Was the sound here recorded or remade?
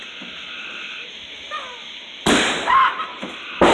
recorded